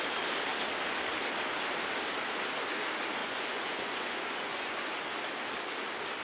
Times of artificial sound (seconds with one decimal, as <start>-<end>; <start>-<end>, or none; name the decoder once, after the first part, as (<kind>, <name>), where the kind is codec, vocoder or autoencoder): 3.2-5.0 (vocoder, Vocos)